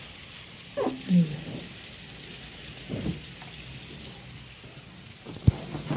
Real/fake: real